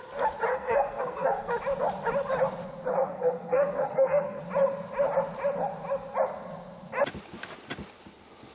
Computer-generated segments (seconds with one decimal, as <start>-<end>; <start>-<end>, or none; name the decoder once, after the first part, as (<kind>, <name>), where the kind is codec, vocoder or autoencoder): 0.5-1.5 (codec, SNAC); 2.9-4.4